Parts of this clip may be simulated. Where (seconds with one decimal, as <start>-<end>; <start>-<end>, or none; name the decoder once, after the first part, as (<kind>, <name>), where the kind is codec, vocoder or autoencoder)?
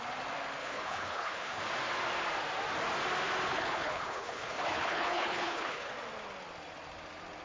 0.6-1.6 (codec, HILCodec); 3.5-5.9